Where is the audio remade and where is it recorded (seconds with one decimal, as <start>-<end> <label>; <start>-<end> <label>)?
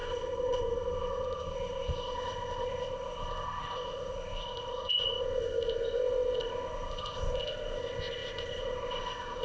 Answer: 0.0-9.4 remade